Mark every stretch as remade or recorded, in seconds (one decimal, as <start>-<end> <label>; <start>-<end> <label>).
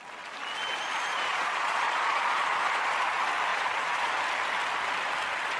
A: 0.0-1.1 recorded; 1.1-2.8 remade; 2.8-3.5 recorded; 3.5-4.1 remade; 4.1-5.6 recorded